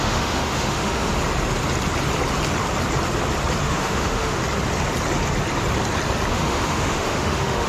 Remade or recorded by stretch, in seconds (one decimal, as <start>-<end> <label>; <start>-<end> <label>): 0.0-1.1 remade; 1.1-3.6 recorded; 3.6-4.4 remade; 4.4-6.3 recorded; 6.3-7.7 remade